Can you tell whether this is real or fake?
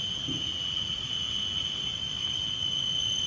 real